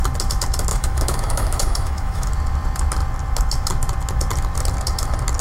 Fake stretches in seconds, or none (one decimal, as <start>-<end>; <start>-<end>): 0.7-2.3